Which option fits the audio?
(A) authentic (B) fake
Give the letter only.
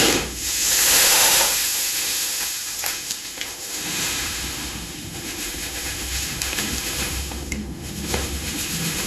B